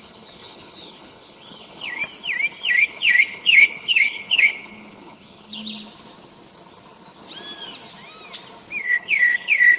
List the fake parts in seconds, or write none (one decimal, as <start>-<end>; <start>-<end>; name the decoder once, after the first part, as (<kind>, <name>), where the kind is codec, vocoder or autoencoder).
0.0-2.0 (codec, HILCodec); 2.7-5.6; 8.8-9.8